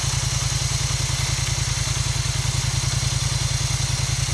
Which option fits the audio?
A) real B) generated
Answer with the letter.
A